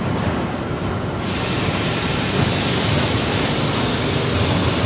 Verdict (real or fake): real